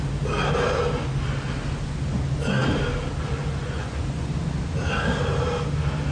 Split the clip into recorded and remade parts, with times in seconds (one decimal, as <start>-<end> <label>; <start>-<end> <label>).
0.0-3.6 recorded; 3.6-4.3 remade; 4.3-6.1 recorded

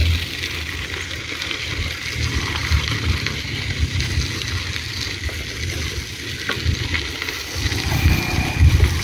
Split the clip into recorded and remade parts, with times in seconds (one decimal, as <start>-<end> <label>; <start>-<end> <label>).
0.0-9.0 recorded

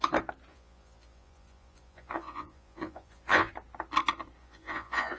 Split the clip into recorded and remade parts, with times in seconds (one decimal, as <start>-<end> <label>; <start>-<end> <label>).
0.0-0.5 recorded; 0.5-3.5 remade; 3.5-4.4 recorded; 4.4-5.2 remade

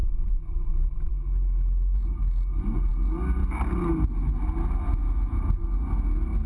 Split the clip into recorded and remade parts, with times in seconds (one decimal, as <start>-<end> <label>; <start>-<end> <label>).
0.0-1.1 remade; 1.1-6.5 recorded

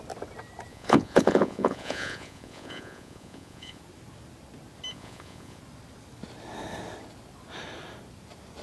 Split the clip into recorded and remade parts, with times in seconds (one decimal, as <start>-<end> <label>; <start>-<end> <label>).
0.0-0.7 recorded; 0.7-3.8 remade; 3.8-4.9 recorded; 4.9-5.6 remade; 5.6-8.6 recorded